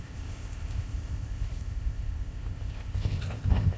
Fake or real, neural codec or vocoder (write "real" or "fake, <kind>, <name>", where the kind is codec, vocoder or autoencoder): fake, codec, ZipCodec